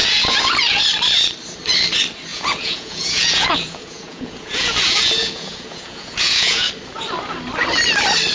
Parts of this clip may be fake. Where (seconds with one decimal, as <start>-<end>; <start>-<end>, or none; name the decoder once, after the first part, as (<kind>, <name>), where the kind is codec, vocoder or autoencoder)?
0.0-0.8 (vocoder, Vocos); 2.3-6.7